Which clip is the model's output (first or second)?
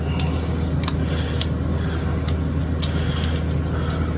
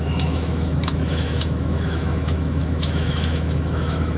second